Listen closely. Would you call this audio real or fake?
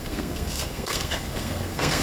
fake